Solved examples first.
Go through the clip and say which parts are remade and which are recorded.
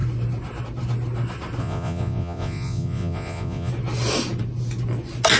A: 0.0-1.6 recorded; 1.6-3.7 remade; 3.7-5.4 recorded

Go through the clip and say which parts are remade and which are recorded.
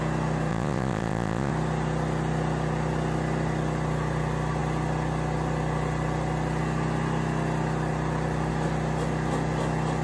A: 0.0-0.5 recorded; 0.5-1.5 remade; 1.5-10.0 recorded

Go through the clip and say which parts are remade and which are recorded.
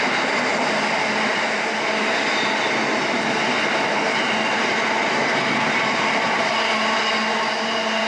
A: 0.0-8.1 recorded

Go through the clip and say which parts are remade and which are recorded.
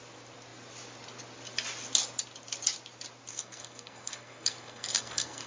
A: 0.0-3.3 recorded; 3.3-5.5 remade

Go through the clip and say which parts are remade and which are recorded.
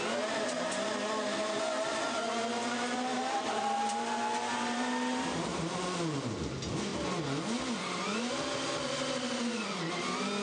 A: 0.0-2.4 recorded; 2.4-5.8 remade; 5.8-10.4 recorded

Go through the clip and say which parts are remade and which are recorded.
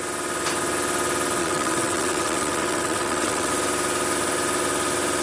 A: 0.0-1.4 recorded; 1.4-3.5 remade; 3.5-5.2 recorded